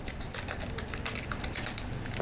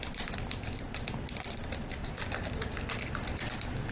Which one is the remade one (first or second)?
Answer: second